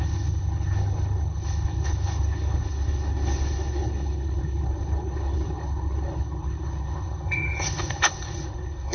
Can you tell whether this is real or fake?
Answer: fake